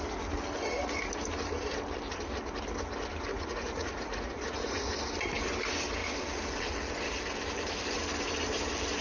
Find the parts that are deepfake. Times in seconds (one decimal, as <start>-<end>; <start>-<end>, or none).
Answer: 3.3-4.9